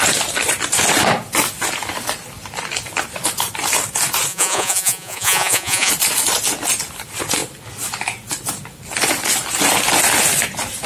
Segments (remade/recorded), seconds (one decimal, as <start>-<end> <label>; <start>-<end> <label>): 0.0-4.3 recorded; 4.3-5.9 remade; 5.9-10.9 recorded

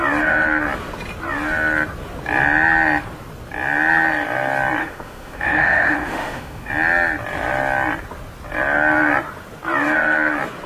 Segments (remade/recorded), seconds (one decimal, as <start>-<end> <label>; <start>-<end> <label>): 0.0-4.8 recorded; 4.8-6.7 remade; 6.7-10.7 recorded

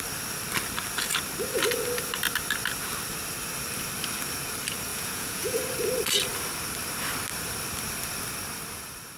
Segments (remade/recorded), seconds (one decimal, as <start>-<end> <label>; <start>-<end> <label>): 0.0-4.9 recorded; 4.9-5.6 remade; 5.6-9.2 recorded

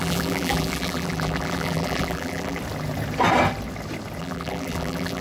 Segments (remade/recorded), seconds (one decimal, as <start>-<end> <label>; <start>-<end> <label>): 0.0-2.6 remade; 2.6-4.2 recorded; 4.2-5.2 remade

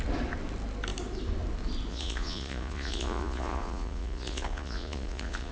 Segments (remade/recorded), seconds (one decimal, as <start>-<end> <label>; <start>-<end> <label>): 0.0-1.9 recorded; 1.9-5.5 remade

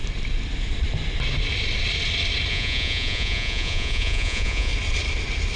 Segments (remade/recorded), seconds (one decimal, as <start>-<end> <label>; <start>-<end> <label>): 0.0-2.5 recorded; 2.5-4.7 remade; 4.7-5.6 recorded

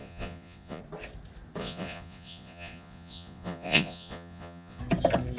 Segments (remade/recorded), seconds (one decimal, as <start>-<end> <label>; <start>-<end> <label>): 0.0-0.8 remade; 0.8-1.6 recorded; 1.6-4.8 remade; 4.8-5.4 recorded